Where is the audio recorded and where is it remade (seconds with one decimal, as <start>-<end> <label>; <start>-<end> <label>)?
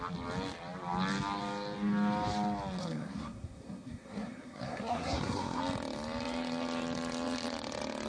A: 0.0-2.8 recorded; 2.8-5.6 remade; 5.6-8.1 recorded